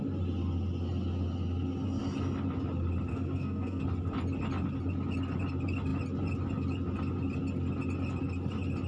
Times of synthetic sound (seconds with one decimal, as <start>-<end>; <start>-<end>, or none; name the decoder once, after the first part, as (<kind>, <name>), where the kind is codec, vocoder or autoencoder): 3.1-3.8 (codec, SNAC)